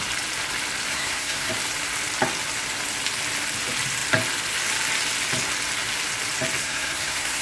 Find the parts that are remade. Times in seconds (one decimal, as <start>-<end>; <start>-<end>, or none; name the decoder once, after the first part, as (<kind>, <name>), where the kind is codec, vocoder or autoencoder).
0.9-1.5 (codec, SNAC); 6.6-7.4